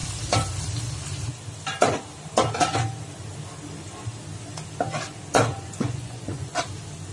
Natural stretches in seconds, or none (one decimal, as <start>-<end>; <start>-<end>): 0.0-5.5; 6.6-7.1